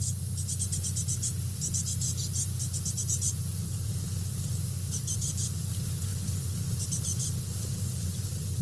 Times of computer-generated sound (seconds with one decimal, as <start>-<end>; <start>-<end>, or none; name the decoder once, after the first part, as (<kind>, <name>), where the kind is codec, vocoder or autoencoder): 3.6-5.6 (vocoder, BigVGAN v2); 6.1-8.6